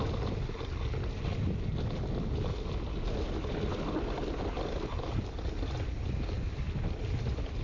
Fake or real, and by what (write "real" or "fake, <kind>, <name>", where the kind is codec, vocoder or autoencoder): real